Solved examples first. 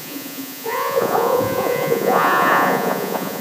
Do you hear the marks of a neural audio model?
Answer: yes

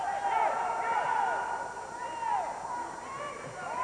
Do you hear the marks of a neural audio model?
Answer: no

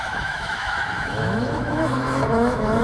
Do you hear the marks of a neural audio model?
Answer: yes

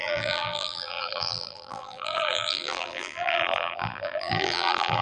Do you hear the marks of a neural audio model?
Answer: yes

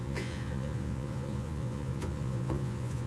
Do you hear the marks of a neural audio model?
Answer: yes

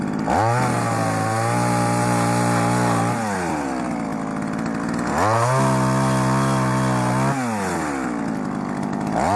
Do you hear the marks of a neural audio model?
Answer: no